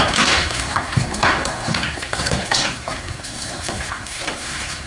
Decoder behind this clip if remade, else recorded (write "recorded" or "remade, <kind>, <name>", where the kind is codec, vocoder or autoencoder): remade, codec, SNAC